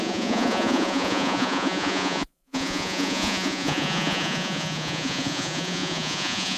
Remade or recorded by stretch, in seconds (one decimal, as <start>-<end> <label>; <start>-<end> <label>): 0.0-6.6 remade